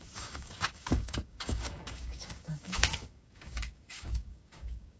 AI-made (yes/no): yes